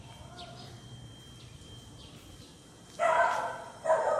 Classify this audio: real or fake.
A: fake